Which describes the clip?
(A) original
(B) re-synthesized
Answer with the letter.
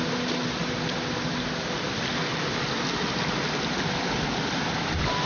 A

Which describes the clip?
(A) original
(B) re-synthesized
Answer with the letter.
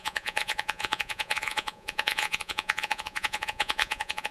B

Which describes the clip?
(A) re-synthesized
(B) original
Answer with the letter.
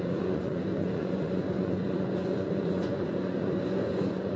A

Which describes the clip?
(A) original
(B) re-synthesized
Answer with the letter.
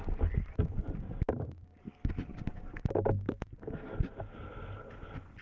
A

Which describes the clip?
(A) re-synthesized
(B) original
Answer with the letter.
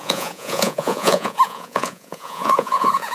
A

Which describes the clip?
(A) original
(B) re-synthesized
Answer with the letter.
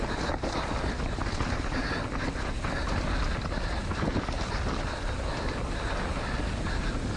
A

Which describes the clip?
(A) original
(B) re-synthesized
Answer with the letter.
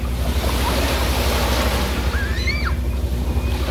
A